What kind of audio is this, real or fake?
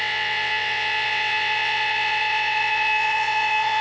fake